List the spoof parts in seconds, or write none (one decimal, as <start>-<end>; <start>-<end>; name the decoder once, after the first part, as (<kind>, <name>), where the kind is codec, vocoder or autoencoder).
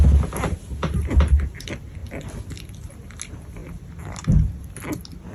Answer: none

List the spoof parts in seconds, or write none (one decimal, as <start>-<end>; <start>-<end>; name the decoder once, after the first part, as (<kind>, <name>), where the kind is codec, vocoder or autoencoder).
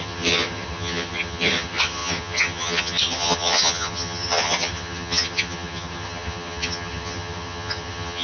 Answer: 0.0-8.2 (vocoder, HiFi-GAN)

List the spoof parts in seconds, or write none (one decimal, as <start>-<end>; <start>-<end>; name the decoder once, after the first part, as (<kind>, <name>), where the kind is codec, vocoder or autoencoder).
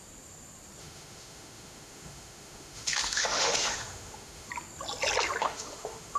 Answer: 0.8-4.5 (autoencoder, DAC-VAE); 5.4-6.2